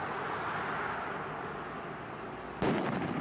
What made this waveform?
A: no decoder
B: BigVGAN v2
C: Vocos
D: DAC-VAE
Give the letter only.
A